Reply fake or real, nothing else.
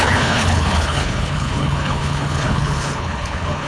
fake